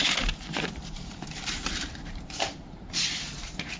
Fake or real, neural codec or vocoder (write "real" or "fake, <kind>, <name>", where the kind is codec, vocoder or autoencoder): fake, vocoder, BigVGAN v2